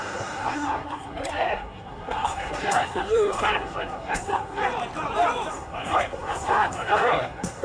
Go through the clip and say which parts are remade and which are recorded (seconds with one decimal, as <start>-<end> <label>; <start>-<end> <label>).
0.0-4.6 remade; 4.6-5.5 recorded; 5.5-7.6 remade